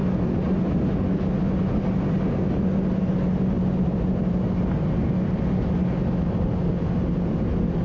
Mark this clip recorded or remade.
recorded